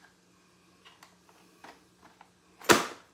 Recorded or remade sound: recorded